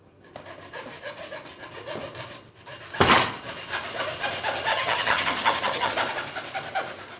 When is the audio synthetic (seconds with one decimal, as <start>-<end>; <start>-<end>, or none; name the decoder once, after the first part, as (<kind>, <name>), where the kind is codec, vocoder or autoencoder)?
4.7-5.9 (vocoder, HiFi-GAN)